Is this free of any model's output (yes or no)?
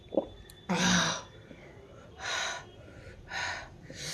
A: no